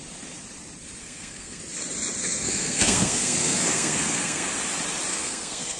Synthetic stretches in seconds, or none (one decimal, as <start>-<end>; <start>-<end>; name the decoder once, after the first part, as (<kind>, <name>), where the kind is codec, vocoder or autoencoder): 1.0-1.6 (codec, SNAC); 2.2-4.5; 5.1-5.8